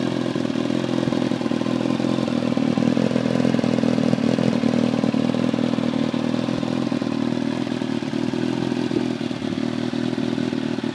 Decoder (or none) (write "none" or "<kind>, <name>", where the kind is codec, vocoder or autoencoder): none